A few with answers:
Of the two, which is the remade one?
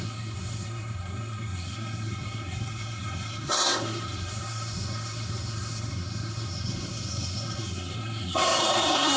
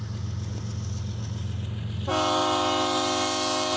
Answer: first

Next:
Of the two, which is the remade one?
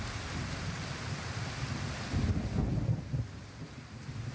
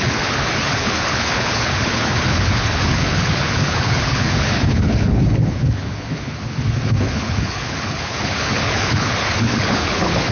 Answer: second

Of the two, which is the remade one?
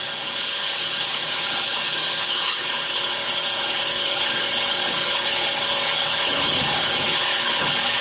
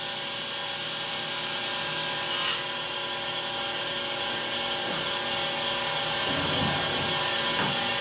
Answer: first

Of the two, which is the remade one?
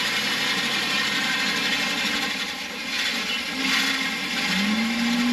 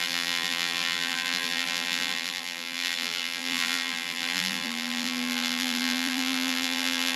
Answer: second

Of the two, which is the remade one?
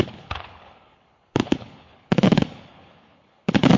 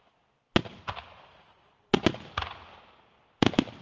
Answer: first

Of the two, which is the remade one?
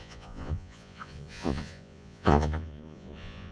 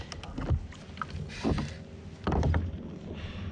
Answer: first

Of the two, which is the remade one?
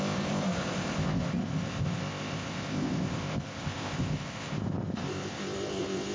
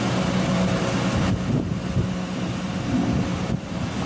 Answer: first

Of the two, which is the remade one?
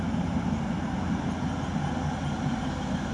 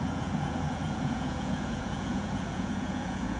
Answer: second